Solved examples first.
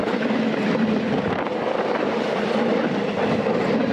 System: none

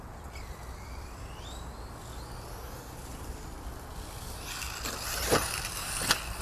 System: none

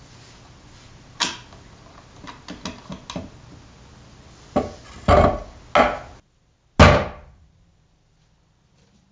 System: none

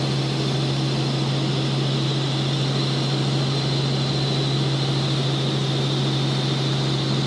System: none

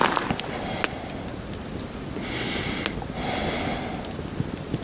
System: none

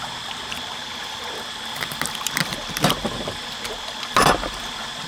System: none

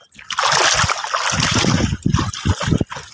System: none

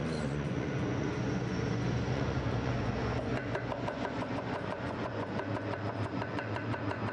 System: vocoder, Vocos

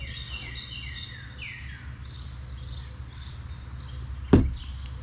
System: none